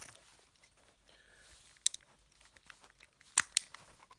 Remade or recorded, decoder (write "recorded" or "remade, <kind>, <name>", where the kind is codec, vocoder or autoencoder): recorded